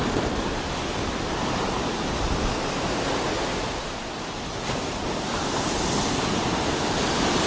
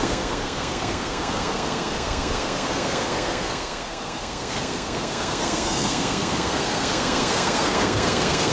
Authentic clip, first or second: first